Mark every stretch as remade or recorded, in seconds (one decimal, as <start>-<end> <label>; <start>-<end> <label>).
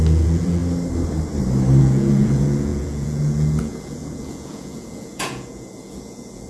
0.0-0.6 remade; 0.6-1.8 recorded; 1.8-6.5 remade